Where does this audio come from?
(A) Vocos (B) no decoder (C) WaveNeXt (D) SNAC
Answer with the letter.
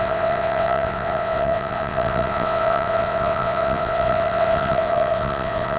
C